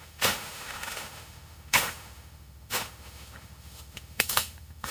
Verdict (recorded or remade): remade